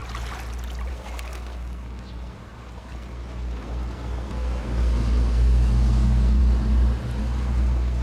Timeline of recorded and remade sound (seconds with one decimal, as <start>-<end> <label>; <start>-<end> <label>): 0.0-0.9 recorded; 0.9-6.4 remade; 6.4-7.2 recorded; 7.2-8.0 remade